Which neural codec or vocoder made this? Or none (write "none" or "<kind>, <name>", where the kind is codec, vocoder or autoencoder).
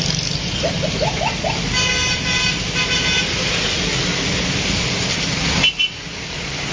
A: none